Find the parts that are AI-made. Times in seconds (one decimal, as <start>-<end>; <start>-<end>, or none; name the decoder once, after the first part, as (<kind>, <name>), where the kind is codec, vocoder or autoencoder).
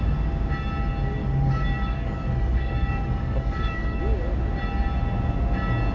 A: 1.2-4.0 (codec, DAC)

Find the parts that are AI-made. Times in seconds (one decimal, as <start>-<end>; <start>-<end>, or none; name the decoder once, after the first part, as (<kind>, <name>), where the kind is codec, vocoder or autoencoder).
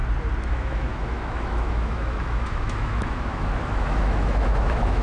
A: 0.5-5.0 (autoencoder, DAC-VAE)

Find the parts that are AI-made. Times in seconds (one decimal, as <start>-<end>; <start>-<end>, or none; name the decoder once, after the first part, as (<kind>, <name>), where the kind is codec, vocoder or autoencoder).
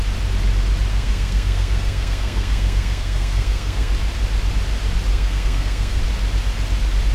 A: 0.9-3.9 (codec, SNAC); 5.1-6.0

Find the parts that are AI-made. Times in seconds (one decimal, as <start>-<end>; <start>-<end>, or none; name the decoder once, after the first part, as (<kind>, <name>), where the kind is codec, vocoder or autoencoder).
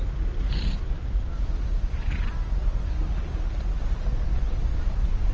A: none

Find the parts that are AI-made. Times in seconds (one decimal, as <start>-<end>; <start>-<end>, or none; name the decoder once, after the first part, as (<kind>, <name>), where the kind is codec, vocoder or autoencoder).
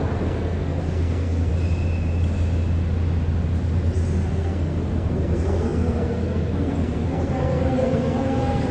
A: 0.0-1.5 (codec, SNAC); 4.3-8.7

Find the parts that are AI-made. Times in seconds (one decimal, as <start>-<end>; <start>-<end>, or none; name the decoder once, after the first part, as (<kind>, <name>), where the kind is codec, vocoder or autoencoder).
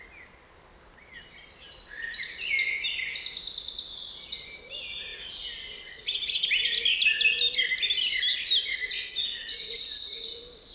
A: none